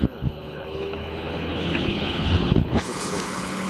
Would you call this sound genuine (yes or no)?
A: no